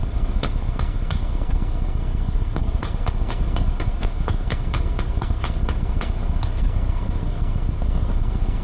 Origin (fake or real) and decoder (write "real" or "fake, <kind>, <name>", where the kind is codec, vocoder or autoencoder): fake, codec, SNAC